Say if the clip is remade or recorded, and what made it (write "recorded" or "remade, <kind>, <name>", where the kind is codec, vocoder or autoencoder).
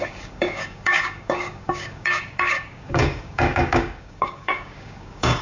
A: remade, codec, DAC